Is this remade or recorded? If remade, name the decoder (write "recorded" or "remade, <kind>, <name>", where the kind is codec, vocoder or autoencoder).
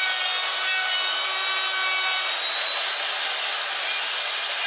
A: recorded